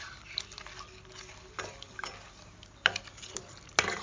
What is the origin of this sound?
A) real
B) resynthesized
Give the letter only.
A